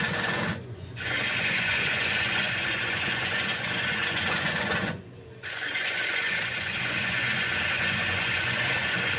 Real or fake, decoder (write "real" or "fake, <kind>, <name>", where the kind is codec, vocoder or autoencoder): fake, vocoder, Vocos